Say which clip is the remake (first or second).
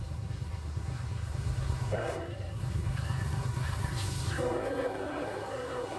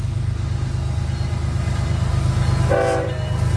first